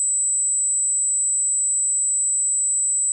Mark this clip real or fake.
real